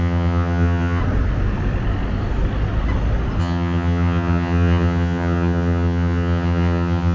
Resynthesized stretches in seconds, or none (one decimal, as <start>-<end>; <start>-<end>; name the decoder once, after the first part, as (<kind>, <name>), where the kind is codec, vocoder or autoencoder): 0.0-1.0 (vocoder, HiFi-GAN); 3.4-7.1